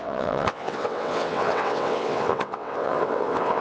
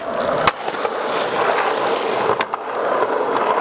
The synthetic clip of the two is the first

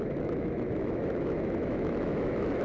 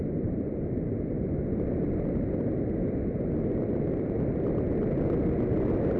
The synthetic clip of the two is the first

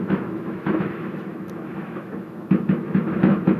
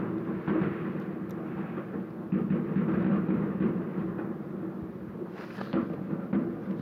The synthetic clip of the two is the first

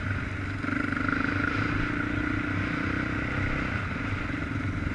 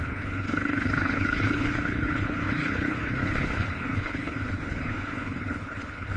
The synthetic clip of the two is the second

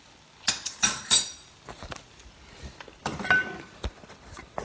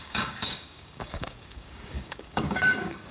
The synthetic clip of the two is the second